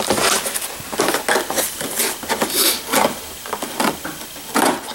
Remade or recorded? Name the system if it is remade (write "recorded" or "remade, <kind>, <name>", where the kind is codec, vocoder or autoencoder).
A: recorded